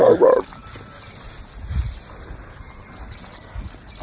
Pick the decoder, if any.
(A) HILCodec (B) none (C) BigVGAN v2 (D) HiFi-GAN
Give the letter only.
B